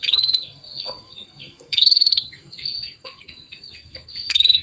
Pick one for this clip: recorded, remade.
remade